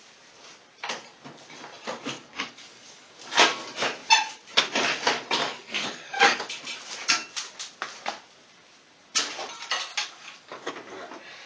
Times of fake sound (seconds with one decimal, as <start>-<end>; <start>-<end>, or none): 2.2-3.1; 5.4-6.4; 9.9-10.7